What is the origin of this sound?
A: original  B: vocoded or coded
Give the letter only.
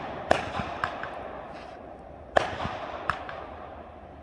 A